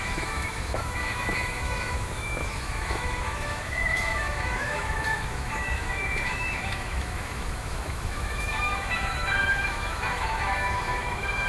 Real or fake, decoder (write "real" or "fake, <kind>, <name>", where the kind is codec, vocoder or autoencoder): fake, autoencoder, DAC-VAE